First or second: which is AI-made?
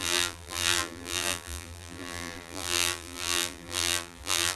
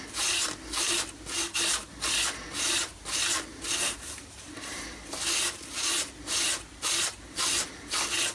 first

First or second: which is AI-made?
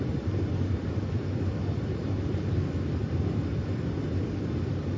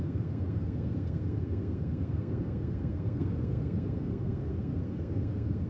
second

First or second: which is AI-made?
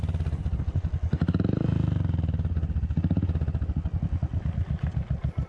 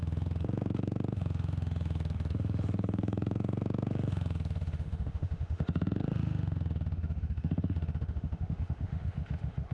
second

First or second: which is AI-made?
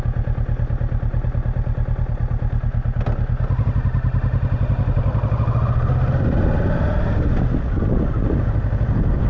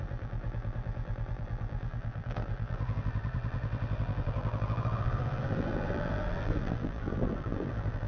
second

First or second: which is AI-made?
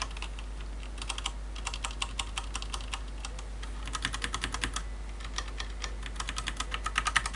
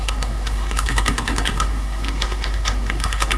second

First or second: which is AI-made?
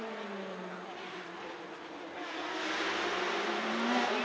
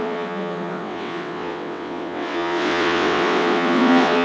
second